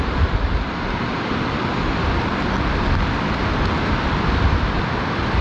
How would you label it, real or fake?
fake